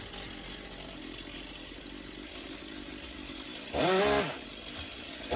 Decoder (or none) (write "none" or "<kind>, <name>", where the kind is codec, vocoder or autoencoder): none